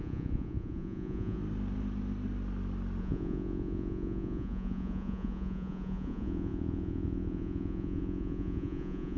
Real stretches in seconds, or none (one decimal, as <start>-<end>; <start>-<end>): 1.4-3.0